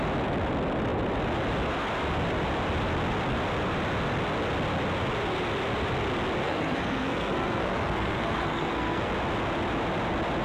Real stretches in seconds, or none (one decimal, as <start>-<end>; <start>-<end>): 0.0-6.4; 9.1-10.4